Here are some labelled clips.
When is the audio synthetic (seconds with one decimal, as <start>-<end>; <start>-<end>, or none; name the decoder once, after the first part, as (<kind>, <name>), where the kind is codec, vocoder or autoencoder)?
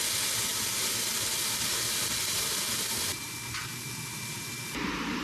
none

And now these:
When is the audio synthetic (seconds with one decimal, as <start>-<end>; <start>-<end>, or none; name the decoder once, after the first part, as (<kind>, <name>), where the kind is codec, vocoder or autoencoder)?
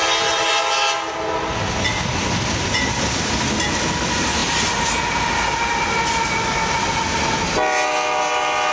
none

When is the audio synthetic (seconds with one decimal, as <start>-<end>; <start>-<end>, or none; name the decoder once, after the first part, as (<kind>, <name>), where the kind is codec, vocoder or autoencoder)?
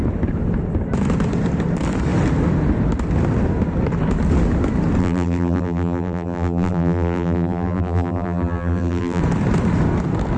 5.0-9.2 (vocoder, BigVGAN v2)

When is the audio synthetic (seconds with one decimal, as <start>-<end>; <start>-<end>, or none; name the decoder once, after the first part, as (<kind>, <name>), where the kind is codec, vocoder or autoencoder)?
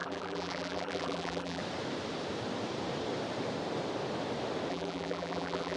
0.0-1.6 (vocoder, BigVGAN v2); 4.7-5.8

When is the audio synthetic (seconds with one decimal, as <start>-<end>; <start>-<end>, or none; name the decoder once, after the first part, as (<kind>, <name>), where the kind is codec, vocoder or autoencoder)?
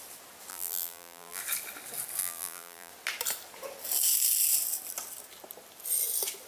0.5-1.4 (vocoder, BigVGAN v2); 2.2-2.9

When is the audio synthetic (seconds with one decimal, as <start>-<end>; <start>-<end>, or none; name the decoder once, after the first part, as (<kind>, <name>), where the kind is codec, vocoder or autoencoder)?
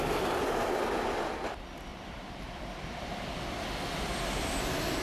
1.9-2.6 (vocoder, BigVGAN v2)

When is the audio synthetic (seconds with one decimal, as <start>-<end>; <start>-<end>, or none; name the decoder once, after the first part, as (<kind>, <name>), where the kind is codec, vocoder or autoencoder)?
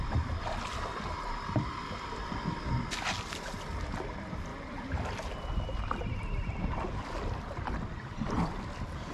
none